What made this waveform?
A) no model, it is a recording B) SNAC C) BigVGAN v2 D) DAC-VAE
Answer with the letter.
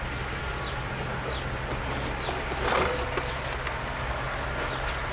A